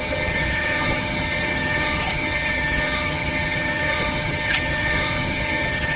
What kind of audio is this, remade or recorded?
remade